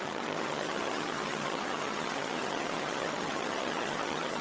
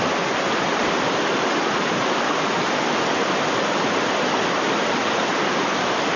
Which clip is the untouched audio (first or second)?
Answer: second